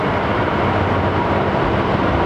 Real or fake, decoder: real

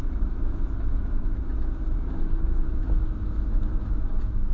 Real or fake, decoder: fake, autoencoder, DAC-VAE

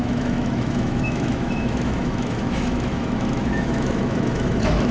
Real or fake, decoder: fake, autoencoder, DAC-VAE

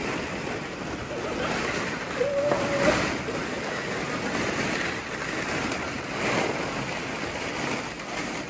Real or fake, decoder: real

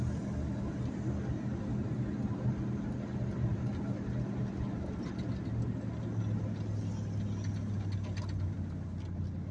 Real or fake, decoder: real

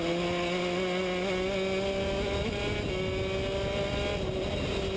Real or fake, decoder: real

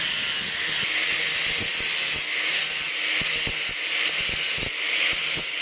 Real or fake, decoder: real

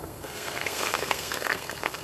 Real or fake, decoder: fake, codec, SNAC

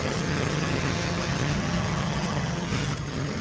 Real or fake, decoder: fake, vocoder, HiFi-GAN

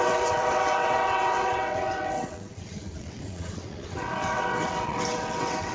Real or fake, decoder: fake, vocoder, WaveNeXt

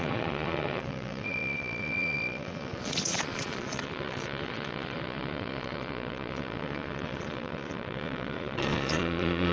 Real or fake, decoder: fake, vocoder, Vocos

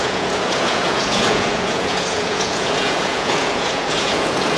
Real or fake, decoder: fake, vocoder, Vocos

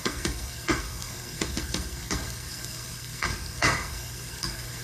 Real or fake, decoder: fake, codec, SNAC